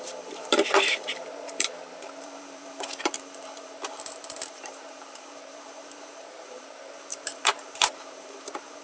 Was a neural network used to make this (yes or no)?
yes